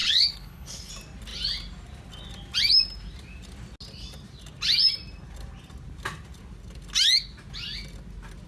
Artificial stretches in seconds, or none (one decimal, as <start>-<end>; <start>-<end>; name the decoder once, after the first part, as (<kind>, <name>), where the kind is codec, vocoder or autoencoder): 0.0-0.9 (codec, HILCodec)